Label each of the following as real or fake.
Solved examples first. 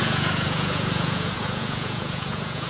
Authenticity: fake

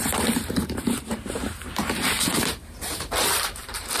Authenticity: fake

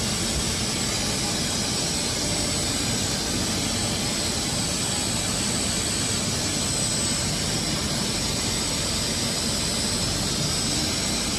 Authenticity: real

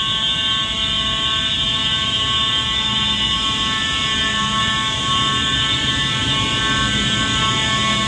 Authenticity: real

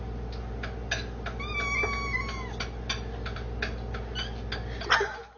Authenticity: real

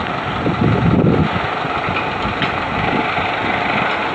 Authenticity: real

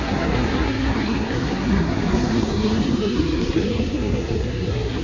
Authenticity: fake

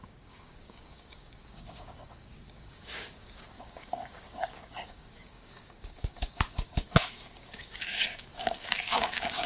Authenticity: fake